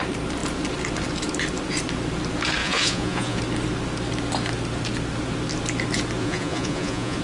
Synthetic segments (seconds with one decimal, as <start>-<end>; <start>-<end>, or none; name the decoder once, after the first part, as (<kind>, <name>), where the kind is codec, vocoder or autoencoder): 2.6-3.4 (vocoder, Vocos); 6.2-7.2